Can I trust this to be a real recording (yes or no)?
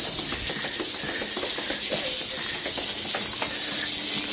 yes